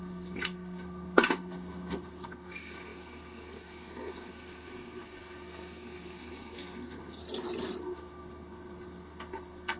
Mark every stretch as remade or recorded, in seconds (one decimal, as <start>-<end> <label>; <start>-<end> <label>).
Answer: 0.0-7.2 remade; 7.2-7.8 recorded; 7.8-9.8 remade